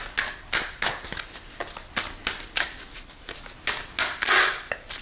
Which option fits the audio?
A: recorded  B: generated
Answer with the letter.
A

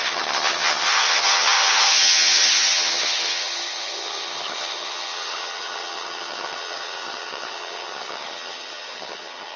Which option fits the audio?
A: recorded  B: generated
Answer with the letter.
B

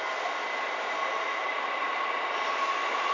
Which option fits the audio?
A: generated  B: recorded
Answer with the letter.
B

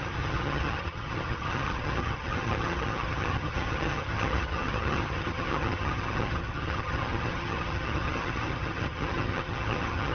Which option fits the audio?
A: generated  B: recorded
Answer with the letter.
A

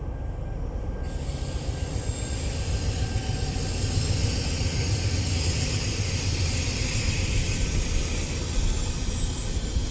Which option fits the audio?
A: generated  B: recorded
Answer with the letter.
B